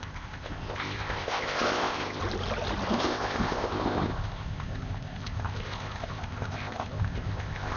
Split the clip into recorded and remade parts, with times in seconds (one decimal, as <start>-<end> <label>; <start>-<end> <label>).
0.0-2.2 remade; 2.2-2.9 recorded; 2.9-7.8 remade